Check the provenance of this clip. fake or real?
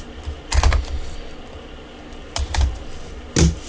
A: real